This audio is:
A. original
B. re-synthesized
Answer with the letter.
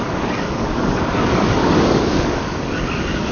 B